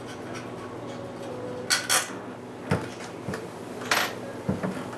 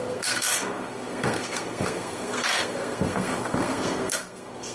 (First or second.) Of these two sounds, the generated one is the second